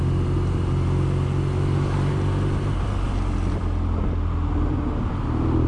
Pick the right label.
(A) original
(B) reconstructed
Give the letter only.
A